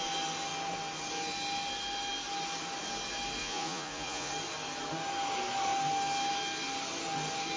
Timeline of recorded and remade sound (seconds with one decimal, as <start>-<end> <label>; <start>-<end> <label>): 0.0-3.4 recorded; 3.4-4.3 remade; 4.3-7.6 recorded